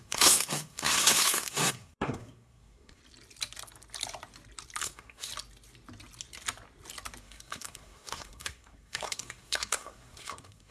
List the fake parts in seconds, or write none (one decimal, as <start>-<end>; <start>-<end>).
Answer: 0.0-3.0; 4.8-5.3; 7.2-10.7